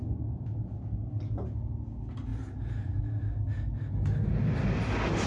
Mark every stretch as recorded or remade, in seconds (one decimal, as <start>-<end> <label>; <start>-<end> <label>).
0.0-2.3 recorded; 2.3-3.0 remade; 3.0-5.3 recorded